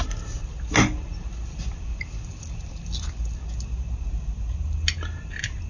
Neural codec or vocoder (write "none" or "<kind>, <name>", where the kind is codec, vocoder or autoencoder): none